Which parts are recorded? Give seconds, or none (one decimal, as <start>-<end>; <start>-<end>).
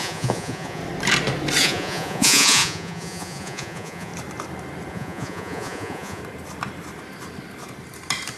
0.8-1.6; 4.1-4.9; 6.2-8.4